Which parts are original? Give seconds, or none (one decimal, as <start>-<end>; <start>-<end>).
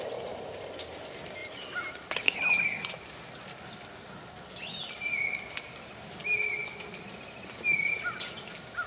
0.0-8.9